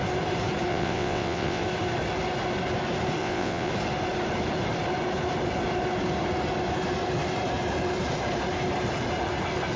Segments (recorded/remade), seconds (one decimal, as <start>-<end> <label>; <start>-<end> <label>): 0.0-0.7 recorded; 0.7-1.6 remade; 1.6-3.2 recorded; 3.2-3.7 remade; 3.7-9.8 recorded